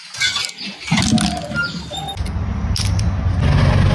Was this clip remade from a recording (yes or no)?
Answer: no